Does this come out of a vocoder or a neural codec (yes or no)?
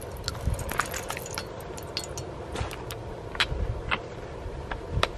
no